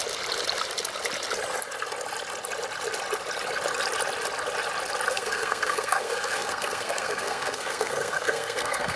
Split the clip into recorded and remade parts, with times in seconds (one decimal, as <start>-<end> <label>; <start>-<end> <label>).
0.0-5.1 recorded; 5.1-9.0 remade